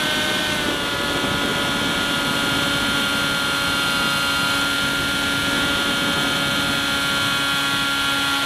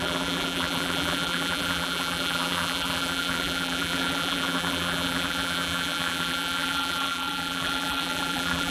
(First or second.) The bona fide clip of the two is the first